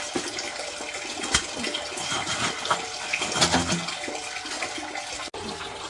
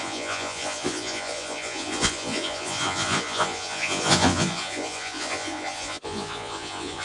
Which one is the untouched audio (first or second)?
first